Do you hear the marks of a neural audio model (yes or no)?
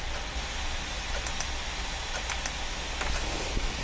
no